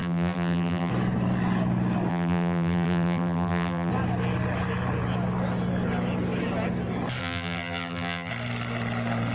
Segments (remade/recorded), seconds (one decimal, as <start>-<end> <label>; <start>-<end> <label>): 0.0-0.9 remade; 0.9-2.1 recorded; 2.1-3.9 remade; 3.9-7.2 recorded; 7.2-8.3 remade; 8.3-9.3 recorded